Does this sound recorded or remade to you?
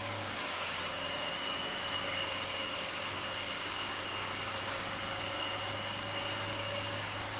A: remade